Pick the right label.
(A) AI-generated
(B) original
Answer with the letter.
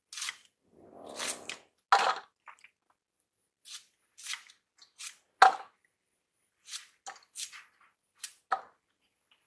B